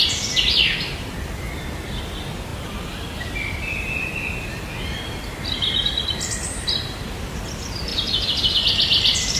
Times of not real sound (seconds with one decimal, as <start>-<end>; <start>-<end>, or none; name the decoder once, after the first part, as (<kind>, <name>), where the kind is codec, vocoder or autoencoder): 7.9-8.5 (vocoder, BigVGAN v2)